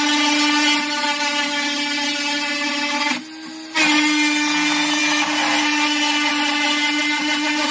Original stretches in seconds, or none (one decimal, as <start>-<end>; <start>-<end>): 0.0-7.7